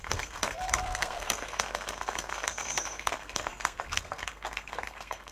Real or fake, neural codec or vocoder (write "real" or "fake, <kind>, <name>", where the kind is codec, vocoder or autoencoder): fake, codec, SNAC